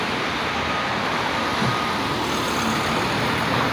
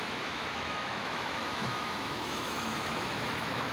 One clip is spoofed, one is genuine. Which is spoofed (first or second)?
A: second